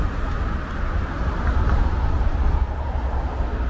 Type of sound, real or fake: real